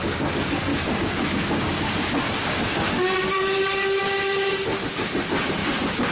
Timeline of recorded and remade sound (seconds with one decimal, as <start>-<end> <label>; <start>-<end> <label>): 0.0-0.7 recorded; 0.7-4.0 remade; 4.0-5.6 recorded; 5.6-6.1 remade